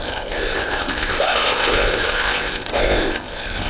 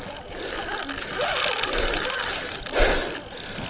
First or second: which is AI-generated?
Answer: first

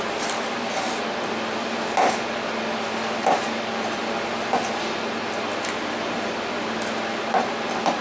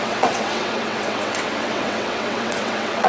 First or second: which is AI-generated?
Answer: second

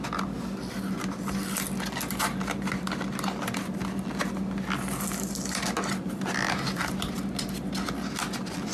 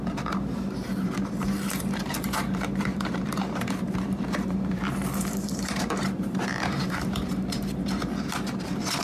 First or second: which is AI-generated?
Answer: second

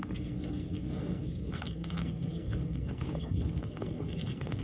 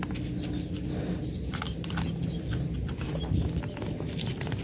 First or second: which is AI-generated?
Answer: first